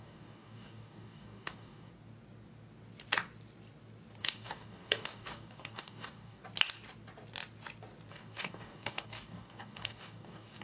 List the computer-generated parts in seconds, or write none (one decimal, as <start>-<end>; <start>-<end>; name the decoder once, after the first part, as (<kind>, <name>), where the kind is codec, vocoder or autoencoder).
0.0-1.9 (codec, DAC); 4.2-6.4; 8.1-10.6